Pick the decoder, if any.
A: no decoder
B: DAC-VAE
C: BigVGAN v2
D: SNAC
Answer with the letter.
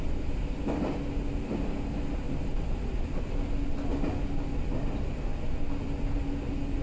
A